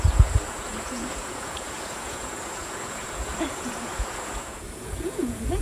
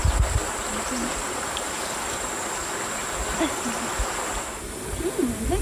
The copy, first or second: first